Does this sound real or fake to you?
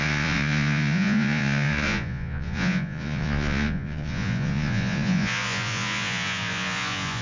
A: fake